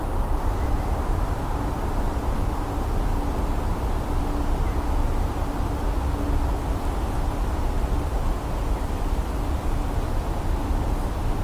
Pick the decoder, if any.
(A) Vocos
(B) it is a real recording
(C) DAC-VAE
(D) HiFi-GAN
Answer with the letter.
B